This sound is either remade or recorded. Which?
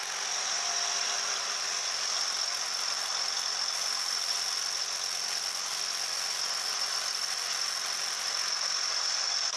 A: recorded